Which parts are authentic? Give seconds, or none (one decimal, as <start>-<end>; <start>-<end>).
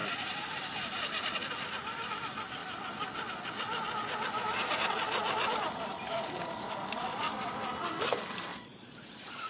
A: 0.0-8.5